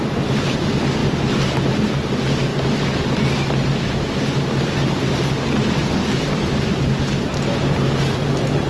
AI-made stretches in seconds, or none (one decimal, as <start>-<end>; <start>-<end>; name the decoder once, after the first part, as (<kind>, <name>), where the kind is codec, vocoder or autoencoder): none